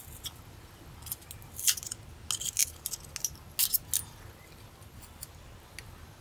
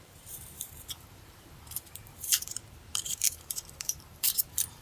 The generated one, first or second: second